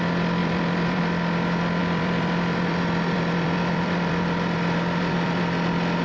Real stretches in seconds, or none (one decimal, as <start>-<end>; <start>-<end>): 0.0-0.4; 1.0-1.8; 5.4-6.0